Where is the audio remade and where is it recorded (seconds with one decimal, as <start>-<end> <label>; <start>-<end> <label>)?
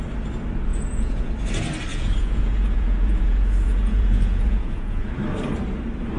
0.0-0.7 recorded; 0.7-1.3 remade; 1.3-1.9 recorded; 1.9-5.1 remade; 5.1-6.2 recorded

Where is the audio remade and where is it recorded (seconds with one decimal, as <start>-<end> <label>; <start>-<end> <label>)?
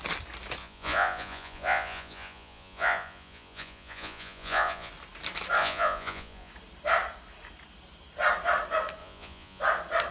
0.0-0.6 recorded; 0.6-4.9 remade; 4.9-5.6 recorded; 5.6-6.5 remade; 6.5-9.0 recorded; 9.0-9.6 remade; 9.6-10.1 recorded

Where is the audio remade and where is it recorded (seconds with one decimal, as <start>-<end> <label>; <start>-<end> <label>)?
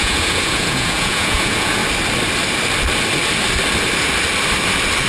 0.0-1.8 remade; 1.8-5.1 recorded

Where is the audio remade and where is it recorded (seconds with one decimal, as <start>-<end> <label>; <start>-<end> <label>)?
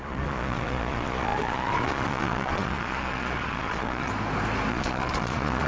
0.0-4.1 remade; 4.1-4.7 recorded; 4.7-5.7 remade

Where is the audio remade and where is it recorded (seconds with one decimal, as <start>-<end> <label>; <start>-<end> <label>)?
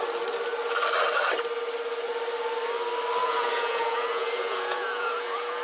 0.0-3.2 recorded; 3.2-5.6 remade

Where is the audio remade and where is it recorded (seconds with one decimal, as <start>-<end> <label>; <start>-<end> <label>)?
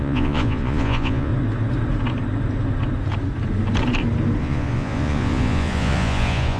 0.0-1.3 remade; 1.3-4.4 recorded; 4.4-6.6 remade